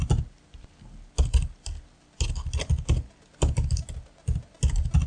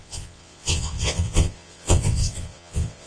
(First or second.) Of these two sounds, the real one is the first